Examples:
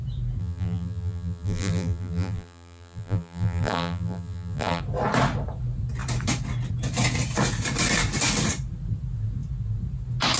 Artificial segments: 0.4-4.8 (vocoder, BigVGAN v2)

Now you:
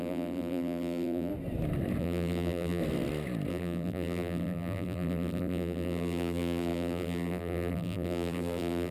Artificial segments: 0.0-1.3 (vocoder, BigVGAN v2); 2.0-2.8; 3.5-8.9